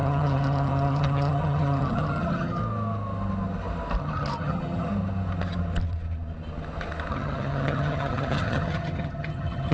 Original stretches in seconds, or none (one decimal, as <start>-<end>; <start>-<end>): 2.6-4.0; 4.9-7.1